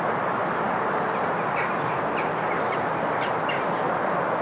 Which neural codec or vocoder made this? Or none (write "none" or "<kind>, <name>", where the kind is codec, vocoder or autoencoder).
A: none